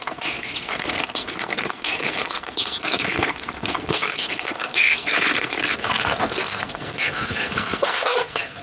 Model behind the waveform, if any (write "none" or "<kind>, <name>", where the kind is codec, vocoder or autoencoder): codec, SNAC